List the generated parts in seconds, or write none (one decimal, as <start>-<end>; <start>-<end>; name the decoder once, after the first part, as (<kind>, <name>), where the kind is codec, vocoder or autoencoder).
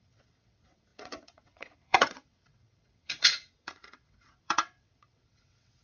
0.0-5.8 (vocoder, WaveNeXt)